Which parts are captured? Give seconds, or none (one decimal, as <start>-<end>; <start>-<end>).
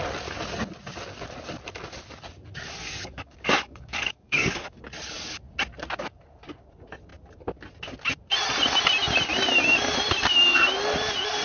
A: 0.0-2.8; 4.8-11.4